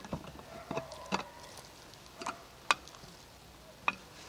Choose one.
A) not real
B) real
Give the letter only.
B